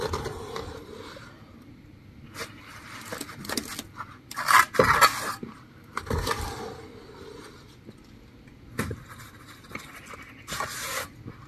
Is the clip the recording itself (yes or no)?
yes